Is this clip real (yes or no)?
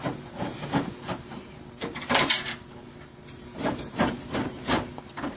no